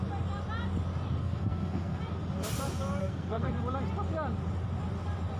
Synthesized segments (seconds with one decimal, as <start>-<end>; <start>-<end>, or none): 1.2-2.0; 3.0-3.5